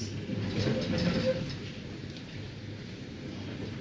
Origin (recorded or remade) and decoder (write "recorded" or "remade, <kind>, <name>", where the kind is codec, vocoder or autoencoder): recorded